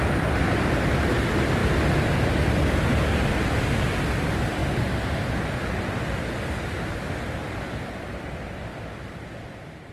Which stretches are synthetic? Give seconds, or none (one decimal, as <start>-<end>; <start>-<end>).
none